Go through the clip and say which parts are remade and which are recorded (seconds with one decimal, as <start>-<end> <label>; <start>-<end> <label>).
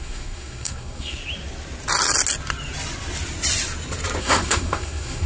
0.0-1.2 remade; 1.2-4.2 recorded; 4.2-5.3 remade